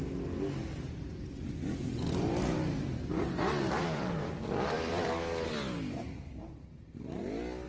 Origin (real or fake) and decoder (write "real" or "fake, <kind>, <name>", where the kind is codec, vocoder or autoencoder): real